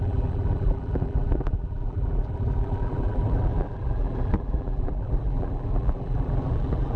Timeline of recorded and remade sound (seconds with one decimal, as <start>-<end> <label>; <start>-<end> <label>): 0.0-7.0 remade